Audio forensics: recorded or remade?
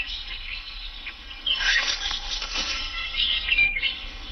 remade